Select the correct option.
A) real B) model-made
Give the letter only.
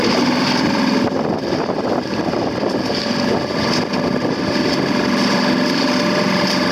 A